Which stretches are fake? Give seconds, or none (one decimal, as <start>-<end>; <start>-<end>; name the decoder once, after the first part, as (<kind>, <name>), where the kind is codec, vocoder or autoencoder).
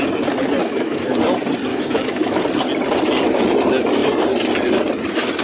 0.6-1.2 (autoencoder, DAC-VAE); 1.7-2.4